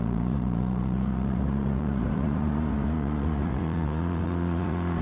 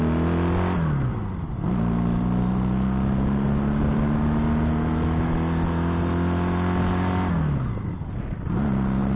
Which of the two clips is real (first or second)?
second